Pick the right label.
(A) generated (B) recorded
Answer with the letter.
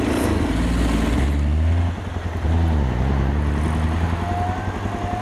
B